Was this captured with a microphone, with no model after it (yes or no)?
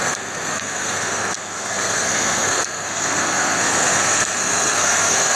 no